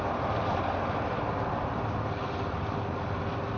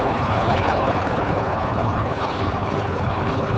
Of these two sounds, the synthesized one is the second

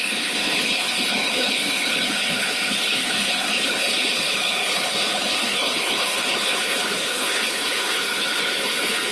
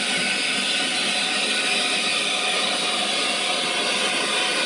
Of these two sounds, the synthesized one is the first